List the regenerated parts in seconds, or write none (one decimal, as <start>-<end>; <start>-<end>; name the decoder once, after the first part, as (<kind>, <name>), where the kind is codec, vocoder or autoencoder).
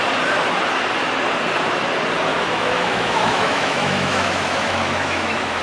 2.3-5.6 (autoencoder, DAC-VAE)